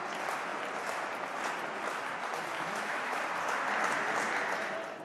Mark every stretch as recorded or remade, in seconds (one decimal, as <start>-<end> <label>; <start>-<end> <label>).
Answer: 0.0-2.5 recorded; 2.5-3.2 remade; 3.2-5.0 recorded